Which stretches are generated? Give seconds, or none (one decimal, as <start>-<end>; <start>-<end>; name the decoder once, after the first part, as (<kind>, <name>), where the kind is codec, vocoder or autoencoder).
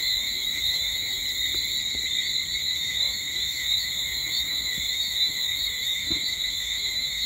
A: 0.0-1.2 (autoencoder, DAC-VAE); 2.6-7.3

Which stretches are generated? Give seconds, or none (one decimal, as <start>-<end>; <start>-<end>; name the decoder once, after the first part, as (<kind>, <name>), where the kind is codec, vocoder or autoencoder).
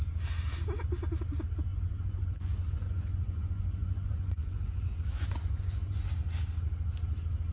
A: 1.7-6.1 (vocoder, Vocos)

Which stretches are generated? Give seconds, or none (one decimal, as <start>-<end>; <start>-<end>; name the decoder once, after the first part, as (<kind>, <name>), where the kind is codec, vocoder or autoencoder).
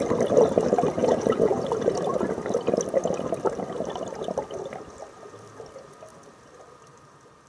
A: 1.0-1.6 (vocoder, Vocos)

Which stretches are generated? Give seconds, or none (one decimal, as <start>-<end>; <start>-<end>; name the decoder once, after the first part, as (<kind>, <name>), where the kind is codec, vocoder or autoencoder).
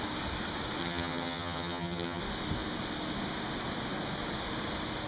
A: 0.8-2.2 (vocoder, HiFi-GAN)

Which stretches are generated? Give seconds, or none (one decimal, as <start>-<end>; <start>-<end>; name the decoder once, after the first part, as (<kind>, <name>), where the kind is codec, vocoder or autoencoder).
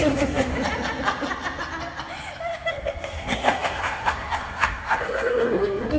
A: 0.0-0.5 (codec, SNAC); 2.7-6.0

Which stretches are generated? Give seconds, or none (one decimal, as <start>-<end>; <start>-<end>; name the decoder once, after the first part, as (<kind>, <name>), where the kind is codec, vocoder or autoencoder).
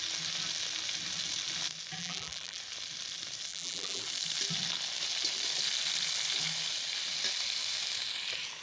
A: 2.0-2.6 (vocoder, BigVGAN v2); 3.5-4.0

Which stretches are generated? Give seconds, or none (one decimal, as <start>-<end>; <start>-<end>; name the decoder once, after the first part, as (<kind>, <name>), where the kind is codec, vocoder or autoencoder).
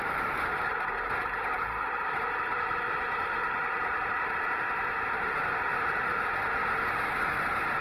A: 0.0-6.6 (vocoder, BigVGAN v2)